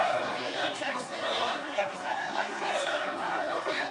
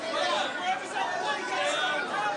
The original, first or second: second